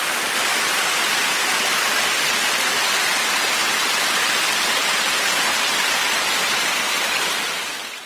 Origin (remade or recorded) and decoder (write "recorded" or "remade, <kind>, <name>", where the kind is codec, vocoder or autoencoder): recorded